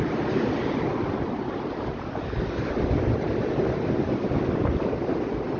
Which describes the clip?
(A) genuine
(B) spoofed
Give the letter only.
A